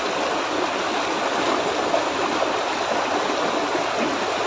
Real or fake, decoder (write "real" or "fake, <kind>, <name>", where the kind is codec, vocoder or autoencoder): real